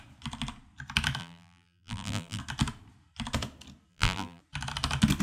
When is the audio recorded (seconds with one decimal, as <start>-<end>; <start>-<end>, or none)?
0.0-1.2; 2.4-3.9; 4.4-5.2